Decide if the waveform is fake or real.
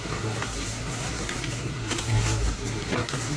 fake